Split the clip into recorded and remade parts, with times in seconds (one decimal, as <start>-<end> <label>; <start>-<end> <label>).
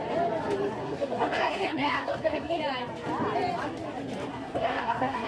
0.0-0.8 recorded; 0.8-2.6 remade; 2.6-4.3 recorded; 4.3-5.3 remade